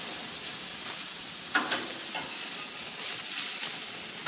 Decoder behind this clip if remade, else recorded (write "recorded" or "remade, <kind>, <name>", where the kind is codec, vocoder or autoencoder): recorded